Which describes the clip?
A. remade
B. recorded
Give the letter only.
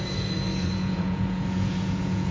A